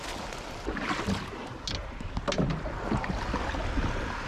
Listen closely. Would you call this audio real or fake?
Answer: real